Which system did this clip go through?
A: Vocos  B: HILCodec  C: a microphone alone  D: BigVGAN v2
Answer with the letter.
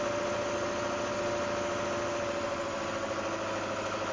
C